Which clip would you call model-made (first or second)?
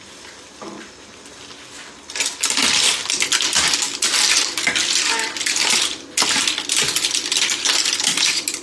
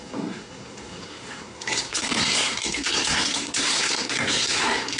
second